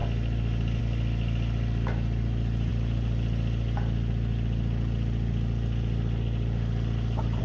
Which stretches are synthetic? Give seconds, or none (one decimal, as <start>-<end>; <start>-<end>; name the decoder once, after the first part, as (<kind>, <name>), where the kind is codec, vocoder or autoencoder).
none